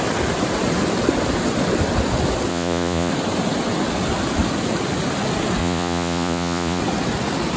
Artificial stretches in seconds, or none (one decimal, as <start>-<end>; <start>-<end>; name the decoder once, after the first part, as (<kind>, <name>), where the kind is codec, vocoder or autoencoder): 2.5-3.1 (vocoder, Vocos); 5.6-6.8